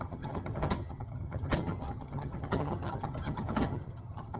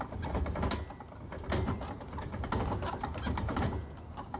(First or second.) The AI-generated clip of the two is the first